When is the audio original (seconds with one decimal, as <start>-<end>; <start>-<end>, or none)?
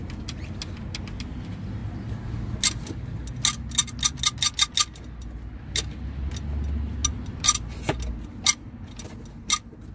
0.0-9.9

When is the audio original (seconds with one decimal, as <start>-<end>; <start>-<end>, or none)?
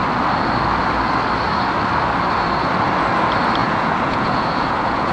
0.0-3.6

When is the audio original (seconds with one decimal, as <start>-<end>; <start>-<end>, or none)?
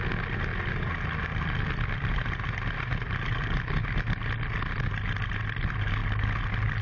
0.0-6.8